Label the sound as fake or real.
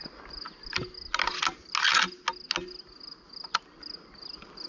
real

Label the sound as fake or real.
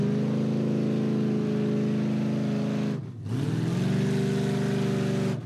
real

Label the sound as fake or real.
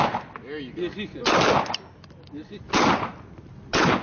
real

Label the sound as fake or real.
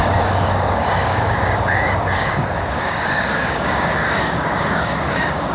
fake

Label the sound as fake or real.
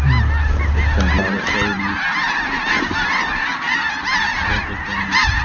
real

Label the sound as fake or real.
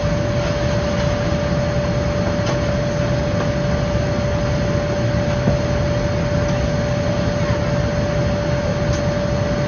real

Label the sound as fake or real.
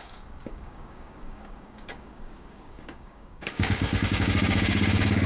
fake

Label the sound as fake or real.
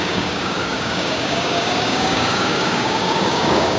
fake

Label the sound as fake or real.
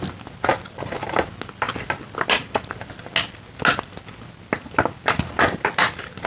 real